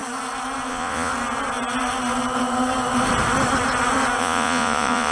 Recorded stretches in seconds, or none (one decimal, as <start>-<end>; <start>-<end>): 0.0-0.7; 1.1-4.2

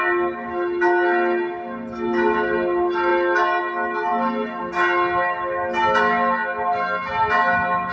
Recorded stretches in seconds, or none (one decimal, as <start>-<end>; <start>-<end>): 0.0-7.9

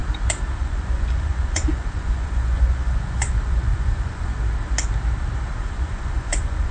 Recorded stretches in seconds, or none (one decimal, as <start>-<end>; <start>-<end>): 0.0-0.6; 4.3-5.6

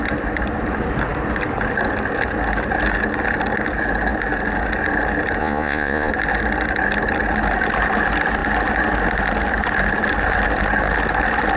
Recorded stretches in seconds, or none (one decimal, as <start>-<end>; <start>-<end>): 0.0-5.4; 6.1-11.6

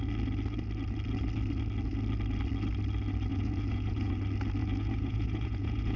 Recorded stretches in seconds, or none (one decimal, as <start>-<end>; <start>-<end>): 0.0-3.3; 4.1-4.6